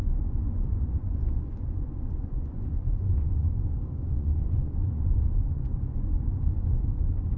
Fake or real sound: fake